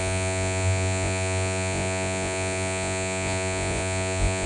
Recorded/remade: remade